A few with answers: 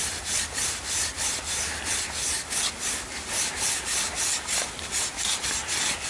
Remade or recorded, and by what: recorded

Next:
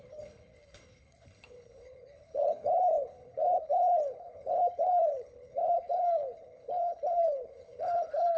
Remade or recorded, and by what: remade, codec, HILCodec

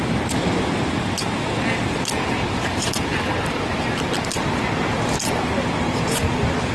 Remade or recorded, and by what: recorded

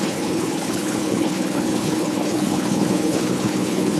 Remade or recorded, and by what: remade, codec, HILCodec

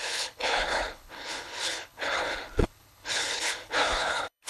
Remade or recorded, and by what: remade, codec, HILCodec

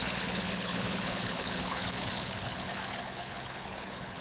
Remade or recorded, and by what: remade, codec, HILCodec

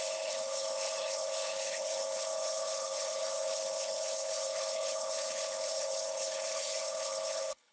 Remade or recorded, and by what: remade, codec, HILCodec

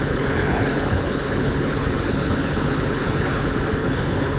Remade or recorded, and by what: remade, codec, HILCodec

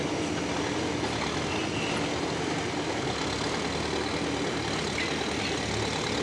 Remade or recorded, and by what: recorded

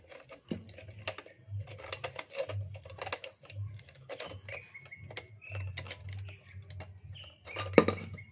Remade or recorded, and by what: recorded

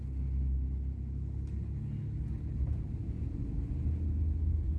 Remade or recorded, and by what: recorded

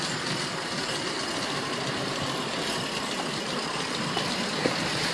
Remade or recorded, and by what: recorded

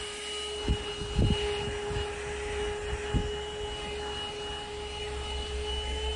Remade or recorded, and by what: recorded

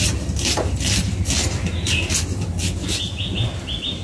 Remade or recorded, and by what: recorded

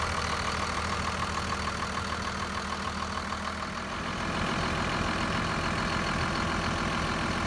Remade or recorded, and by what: recorded